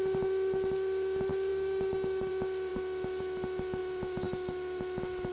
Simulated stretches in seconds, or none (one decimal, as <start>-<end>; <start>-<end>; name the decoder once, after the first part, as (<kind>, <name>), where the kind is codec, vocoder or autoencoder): 1.5-2.3 (codec, DAC)